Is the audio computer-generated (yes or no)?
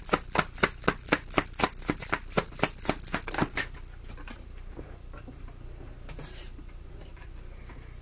no